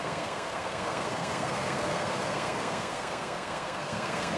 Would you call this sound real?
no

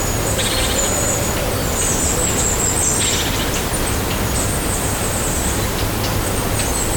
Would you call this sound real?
yes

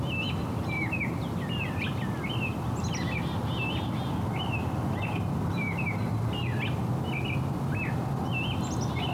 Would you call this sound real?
yes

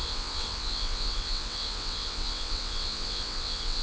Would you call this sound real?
no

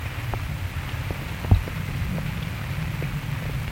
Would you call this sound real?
yes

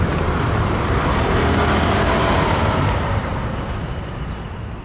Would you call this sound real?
no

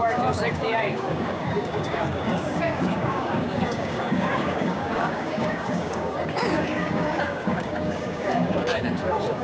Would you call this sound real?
no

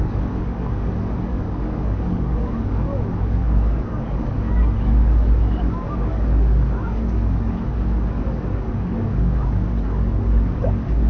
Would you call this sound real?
no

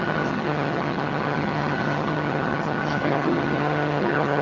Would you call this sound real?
no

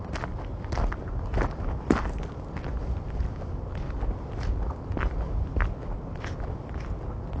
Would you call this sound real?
yes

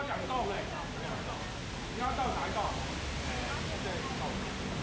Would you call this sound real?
yes